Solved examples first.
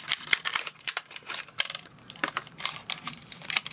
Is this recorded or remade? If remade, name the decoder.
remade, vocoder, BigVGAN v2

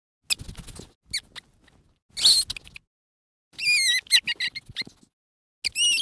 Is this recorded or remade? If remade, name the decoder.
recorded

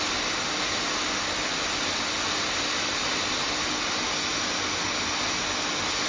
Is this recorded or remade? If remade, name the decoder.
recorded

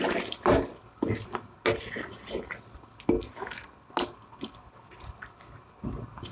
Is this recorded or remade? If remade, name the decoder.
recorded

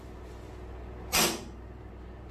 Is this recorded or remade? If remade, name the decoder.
recorded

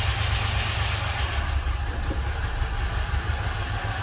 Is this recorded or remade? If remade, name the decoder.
recorded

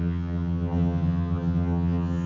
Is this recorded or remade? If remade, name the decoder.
remade, vocoder, HiFi-GAN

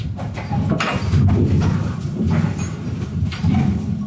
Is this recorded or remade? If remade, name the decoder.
recorded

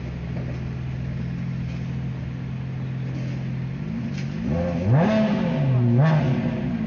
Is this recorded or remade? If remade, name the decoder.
recorded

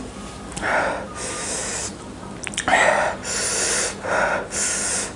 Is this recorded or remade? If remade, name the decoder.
recorded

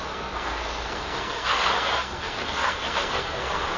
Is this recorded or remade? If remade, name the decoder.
remade, codec, SNAC